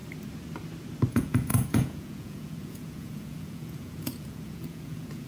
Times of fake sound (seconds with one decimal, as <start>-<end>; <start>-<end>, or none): 1.1-5.3